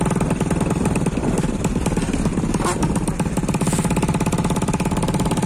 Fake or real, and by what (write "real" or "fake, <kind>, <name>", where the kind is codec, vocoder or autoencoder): real